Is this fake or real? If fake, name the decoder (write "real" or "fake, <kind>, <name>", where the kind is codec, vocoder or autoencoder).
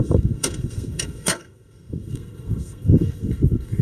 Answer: fake, codec, SNAC